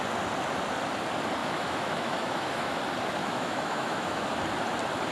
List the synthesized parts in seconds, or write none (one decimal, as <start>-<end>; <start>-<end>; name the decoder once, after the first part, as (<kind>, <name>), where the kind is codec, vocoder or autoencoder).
1.4-2.8 (autoencoder, DAC-VAE); 3.2-4.3